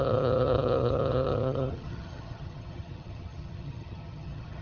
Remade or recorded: remade